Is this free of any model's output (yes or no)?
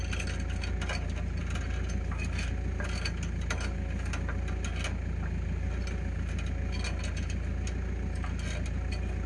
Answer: yes